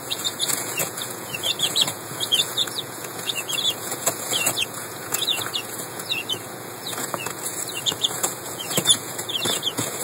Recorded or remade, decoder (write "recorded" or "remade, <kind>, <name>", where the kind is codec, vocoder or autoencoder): remade, vocoder, Vocos